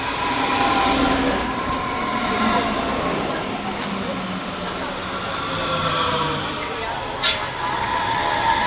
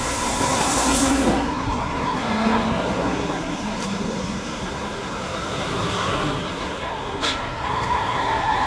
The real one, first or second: first